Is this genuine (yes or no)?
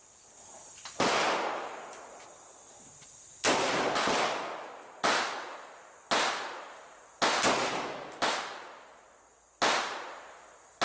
yes